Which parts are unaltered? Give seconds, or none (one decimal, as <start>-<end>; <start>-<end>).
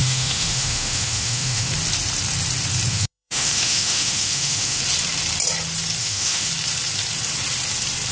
1.7-2.9; 4.8-6.0; 6.5-8.1